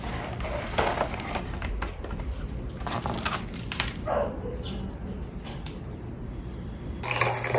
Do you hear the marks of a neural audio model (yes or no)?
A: no